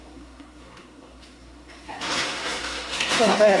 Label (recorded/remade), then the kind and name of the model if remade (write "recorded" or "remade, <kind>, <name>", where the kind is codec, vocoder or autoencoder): remade, codec, SNAC